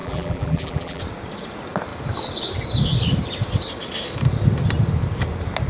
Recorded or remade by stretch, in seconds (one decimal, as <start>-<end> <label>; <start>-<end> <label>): 0.0-1.0 remade; 1.0-5.7 recorded